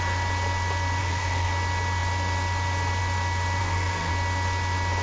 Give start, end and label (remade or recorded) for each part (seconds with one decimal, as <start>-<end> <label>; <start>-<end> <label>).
0.0-1.0 recorded; 1.0-1.5 remade; 1.5-3.6 recorded; 3.6-4.1 remade; 4.1-5.0 recorded